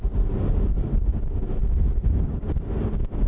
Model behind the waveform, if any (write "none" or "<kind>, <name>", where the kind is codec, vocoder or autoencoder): none